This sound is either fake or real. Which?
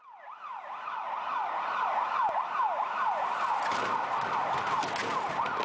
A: real